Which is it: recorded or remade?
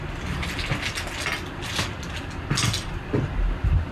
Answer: recorded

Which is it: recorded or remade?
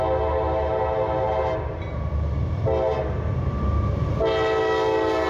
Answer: recorded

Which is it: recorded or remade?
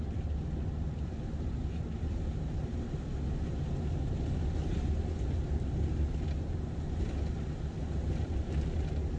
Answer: recorded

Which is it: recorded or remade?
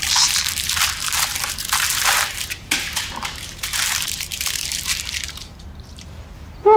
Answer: remade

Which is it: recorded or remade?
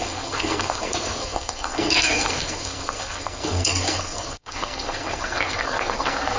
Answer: remade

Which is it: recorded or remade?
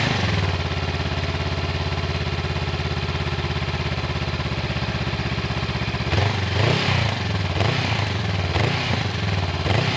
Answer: recorded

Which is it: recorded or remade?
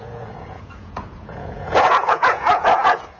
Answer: remade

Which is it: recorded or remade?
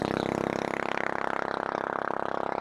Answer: recorded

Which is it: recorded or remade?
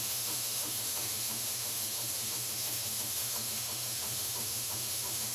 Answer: remade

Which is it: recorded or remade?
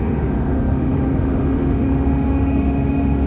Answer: remade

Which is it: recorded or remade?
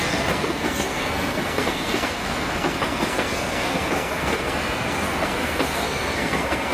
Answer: remade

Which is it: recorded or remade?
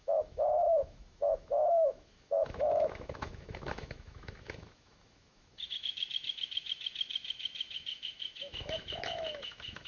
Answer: remade